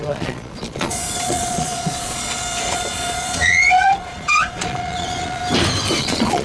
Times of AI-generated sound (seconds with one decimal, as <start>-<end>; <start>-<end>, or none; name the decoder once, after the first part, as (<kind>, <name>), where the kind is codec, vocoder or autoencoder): 0.0-5.4 (vocoder, Vocos); 6.0-6.4